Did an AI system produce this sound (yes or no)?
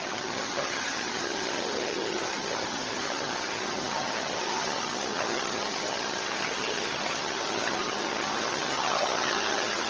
yes